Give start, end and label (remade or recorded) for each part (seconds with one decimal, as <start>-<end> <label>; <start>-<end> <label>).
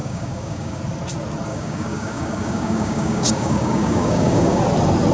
0.0-0.8 remade; 0.8-1.5 recorded; 1.5-4.6 remade; 4.6-5.1 recorded